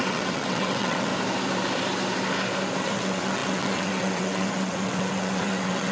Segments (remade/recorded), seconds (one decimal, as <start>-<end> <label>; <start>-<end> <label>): 0.0-1.1 remade; 1.1-2.8 recorded; 2.8-5.9 remade